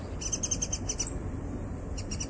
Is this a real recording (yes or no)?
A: yes